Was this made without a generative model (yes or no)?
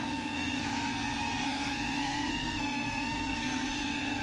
no